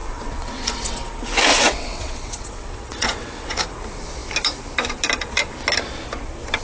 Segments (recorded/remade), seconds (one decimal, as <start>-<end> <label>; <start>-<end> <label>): 0.0-1.1 remade; 1.1-1.5 recorded; 1.5-3.6 remade; 3.6-6.6 recorded